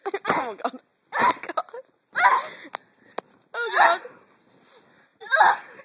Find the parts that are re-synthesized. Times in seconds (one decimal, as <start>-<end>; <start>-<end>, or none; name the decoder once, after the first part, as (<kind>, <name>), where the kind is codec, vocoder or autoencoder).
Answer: none

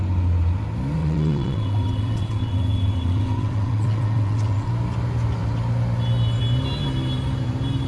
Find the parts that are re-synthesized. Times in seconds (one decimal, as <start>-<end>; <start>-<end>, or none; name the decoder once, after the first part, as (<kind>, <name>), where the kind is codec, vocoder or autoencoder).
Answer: 1.0-4.7 (vocoder, WaveNeXt)